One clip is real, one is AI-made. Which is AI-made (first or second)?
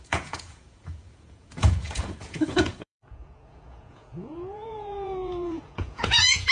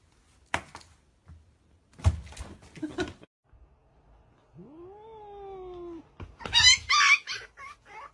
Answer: first